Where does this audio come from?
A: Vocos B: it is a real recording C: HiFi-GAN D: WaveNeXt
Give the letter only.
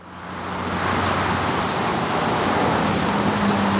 B